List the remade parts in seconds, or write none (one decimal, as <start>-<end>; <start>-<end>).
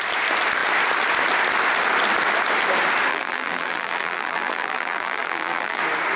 3.1-5.8